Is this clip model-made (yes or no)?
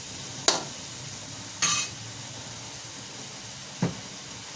no